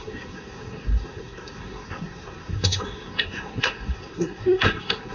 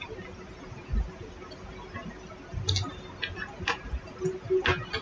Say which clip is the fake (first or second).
first